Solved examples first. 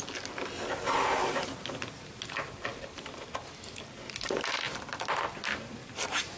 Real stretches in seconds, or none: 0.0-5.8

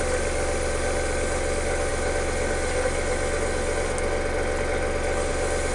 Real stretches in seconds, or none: 0.0-5.7

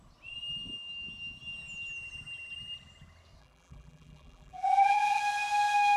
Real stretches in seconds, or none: 0.0-3.4; 5.2-6.0

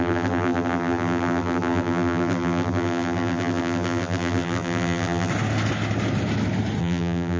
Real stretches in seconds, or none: 5.3-6.8

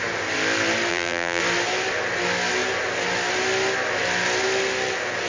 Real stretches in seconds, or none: 0.0-0.9; 1.4-5.3